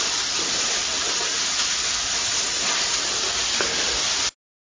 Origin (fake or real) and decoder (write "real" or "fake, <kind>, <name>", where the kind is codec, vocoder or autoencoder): real